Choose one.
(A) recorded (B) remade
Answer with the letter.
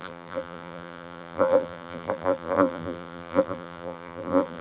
B